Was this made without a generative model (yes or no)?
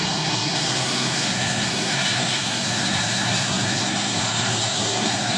no